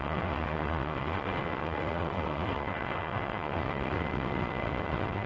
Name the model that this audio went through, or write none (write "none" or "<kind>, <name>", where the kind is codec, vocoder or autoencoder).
vocoder, WaveNeXt